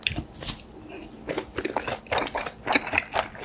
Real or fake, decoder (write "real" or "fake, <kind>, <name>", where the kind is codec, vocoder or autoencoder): real